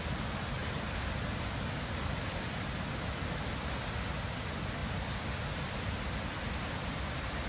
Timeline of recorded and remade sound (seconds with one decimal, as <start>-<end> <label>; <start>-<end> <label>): 0.0-7.5 recorded